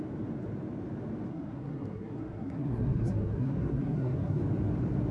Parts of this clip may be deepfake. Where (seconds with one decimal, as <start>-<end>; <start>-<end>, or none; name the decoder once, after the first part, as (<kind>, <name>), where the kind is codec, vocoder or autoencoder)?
1.3-4.4 (codec, SNAC)